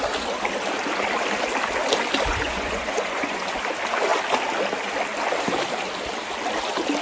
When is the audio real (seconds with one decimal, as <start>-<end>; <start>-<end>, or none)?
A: 0.0-2.3; 3.6-7.0